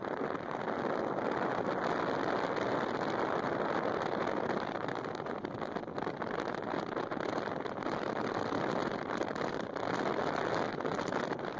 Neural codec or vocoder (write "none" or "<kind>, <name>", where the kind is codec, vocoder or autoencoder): none